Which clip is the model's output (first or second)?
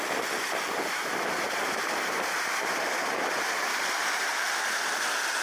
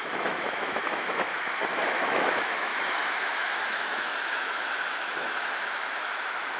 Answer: second